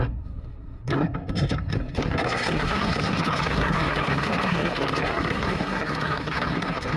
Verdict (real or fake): fake